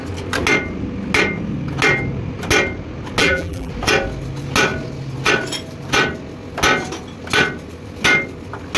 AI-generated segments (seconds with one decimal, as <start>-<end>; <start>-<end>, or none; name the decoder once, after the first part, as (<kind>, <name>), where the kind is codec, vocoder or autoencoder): 3.2-3.7 (vocoder, BigVGAN v2)